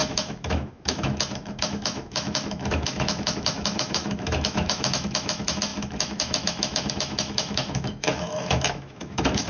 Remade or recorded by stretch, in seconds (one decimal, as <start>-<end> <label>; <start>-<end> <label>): 0.0-9.5 remade